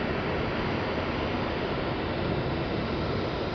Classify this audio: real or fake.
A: real